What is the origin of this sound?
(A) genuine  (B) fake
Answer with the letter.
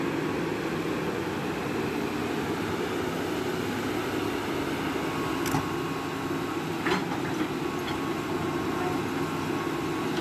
A